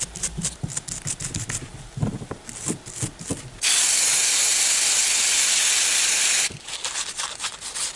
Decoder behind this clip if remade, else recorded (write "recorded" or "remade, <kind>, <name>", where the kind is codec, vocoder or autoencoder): recorded